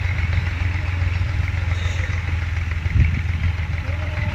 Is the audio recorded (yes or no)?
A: yes